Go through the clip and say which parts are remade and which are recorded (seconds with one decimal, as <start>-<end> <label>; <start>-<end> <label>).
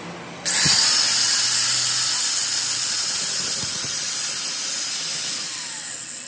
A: 0.0-2.4 recorded; 2.4-5.1 remade; 5.1-6.3 recorded